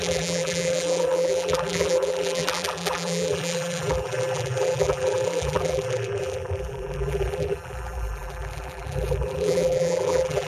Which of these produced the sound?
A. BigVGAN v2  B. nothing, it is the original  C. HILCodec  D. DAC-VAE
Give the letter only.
A